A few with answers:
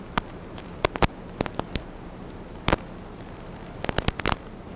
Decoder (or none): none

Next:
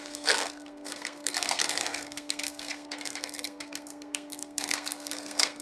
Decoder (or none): codec, SNAC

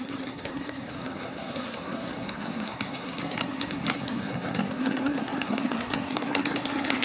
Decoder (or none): codec, SNAC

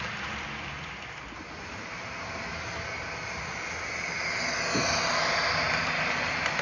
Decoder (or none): none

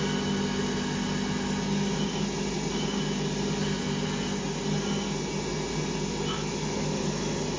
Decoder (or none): none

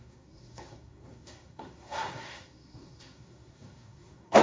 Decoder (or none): codec, SNAC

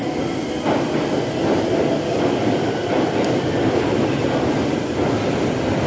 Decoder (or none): none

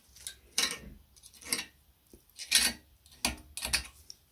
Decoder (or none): none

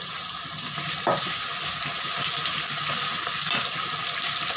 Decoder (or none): none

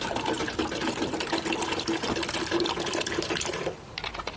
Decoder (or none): none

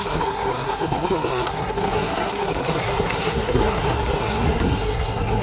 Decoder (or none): codec, SNAC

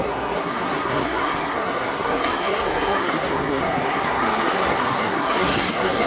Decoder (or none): codec, SNAC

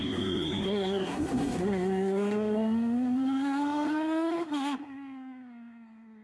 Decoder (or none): codec, SNAC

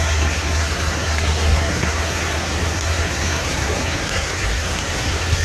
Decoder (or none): codec, SNAC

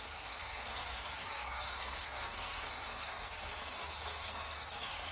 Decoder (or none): codec, SNAC